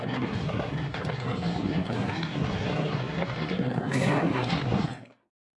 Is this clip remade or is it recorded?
remade